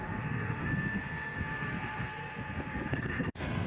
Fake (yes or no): yes